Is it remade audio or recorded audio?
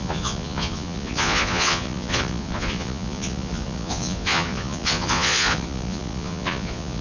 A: remade